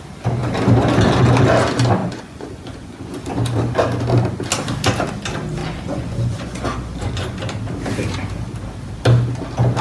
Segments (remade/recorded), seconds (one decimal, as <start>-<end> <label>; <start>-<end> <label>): 0.0-2.0 recorded; 2.0-3.2 remade; 3.2-5.6 recorded; 5.6-7.4 remade; 7.4-9.8 recorded